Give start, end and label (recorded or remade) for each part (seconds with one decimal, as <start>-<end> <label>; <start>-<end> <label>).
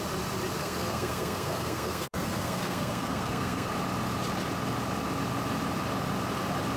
0.0-0.6 recorded; 0.6-3.7 remade; 3.7-6.8 recorded